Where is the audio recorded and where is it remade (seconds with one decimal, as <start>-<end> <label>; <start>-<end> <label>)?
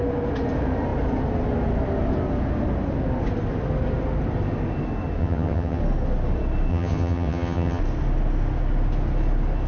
0.0-5.2 recorded; 5.2-5.8 remade; 5.8-6.7 recorded; 6.7-7.8 remade; 7.8-9.7 recorded